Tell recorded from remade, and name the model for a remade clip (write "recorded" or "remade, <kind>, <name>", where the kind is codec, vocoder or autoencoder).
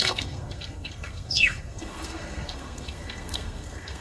remade, codec, SNAC